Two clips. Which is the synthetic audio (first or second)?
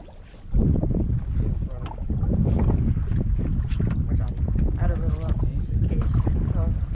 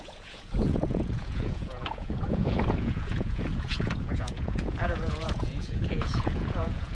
second